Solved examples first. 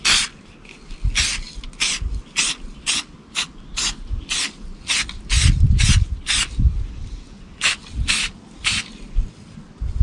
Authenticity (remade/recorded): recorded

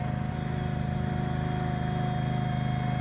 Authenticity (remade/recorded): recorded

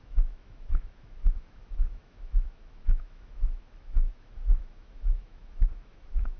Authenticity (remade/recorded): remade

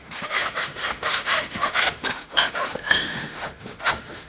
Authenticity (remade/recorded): remade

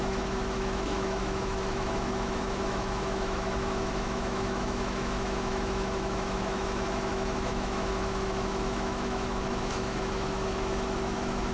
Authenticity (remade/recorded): remade